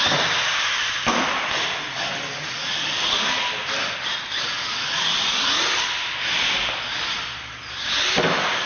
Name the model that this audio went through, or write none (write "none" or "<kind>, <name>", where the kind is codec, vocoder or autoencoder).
none